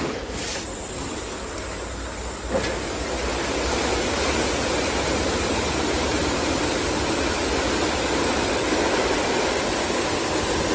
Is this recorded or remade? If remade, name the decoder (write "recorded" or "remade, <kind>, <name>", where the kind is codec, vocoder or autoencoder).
recorded